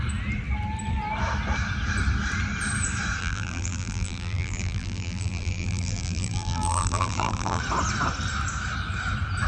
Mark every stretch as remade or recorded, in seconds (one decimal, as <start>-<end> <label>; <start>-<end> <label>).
0.0-3.2 recorded; 3.2-7.6 remade; 7.6-9.5 recorded